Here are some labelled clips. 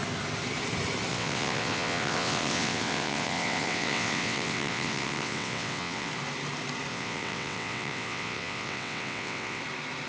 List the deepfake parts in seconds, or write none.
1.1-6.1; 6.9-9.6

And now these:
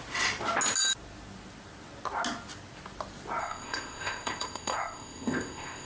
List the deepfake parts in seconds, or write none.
3.4-5.9